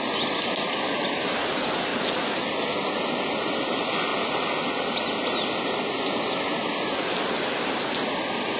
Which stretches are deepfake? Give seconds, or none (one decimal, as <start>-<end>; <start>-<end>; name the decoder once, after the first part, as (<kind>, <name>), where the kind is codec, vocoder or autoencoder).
none